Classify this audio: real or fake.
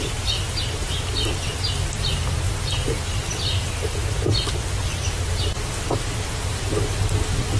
real